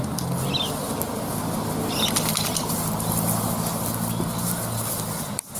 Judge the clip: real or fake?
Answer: real